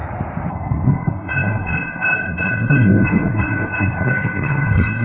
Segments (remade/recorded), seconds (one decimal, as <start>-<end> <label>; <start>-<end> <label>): 0.0-0.5 recorded; 0.5-5.0 remade